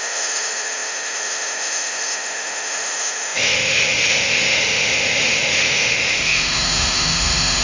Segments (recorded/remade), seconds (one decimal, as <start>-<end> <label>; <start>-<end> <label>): 0.0-7.6 remade